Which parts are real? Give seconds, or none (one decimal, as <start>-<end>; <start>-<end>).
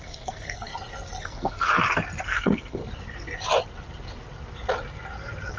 0.7-1.2; 1.7-2.2; 2.8-5.6